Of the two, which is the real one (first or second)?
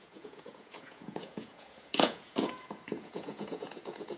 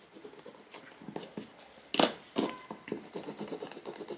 second